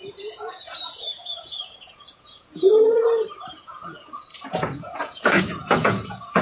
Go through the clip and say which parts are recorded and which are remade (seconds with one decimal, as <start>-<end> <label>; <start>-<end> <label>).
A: 0.0-2.7 remade; 2.7-3.5 recorded; 3.5-6.4 remade

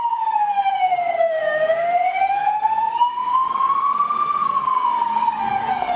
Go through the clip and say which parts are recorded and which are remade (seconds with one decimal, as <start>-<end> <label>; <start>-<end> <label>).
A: 0.0-6.0 remade

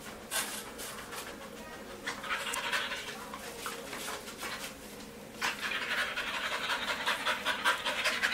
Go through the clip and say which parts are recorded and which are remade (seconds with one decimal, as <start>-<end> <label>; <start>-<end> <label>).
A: 0.0-6.0 recorded; 6.0-8.3 remade

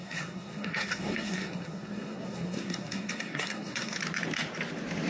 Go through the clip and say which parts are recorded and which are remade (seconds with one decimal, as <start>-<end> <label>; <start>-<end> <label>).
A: 0.0-4.0 remade; 4.0-5.1 recorded